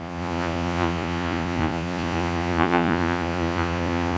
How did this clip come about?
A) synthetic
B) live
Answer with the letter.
A